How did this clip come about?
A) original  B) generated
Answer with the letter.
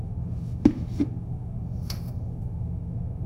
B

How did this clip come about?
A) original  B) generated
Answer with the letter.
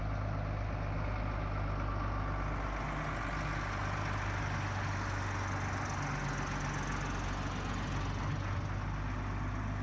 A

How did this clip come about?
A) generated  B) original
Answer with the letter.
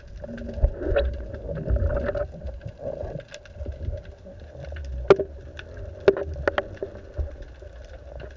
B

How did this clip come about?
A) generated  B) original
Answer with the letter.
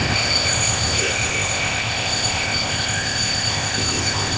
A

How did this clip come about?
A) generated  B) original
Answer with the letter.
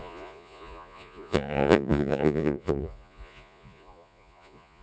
A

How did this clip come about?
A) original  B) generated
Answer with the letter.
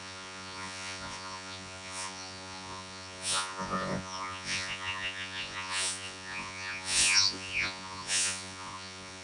B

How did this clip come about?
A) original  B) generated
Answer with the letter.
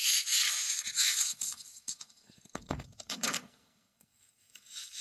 B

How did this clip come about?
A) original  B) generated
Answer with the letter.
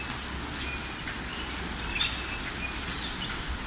A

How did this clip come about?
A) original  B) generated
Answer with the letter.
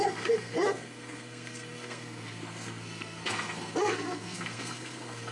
B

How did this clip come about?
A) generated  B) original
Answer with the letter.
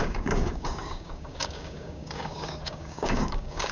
A